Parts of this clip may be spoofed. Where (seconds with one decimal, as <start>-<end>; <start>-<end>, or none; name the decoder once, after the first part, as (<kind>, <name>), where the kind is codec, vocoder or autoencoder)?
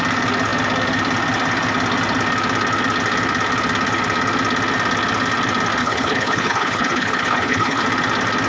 5.8-7.8 (codec, HILCodec)